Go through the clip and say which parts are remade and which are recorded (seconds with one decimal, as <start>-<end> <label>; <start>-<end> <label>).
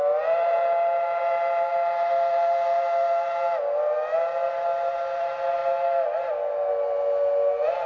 0.0-7.9 recorded